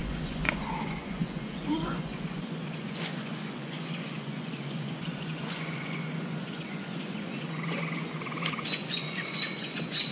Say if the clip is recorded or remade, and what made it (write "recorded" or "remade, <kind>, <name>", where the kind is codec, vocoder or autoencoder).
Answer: remade, vocoder, Vocos